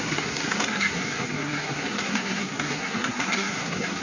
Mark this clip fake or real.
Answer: fake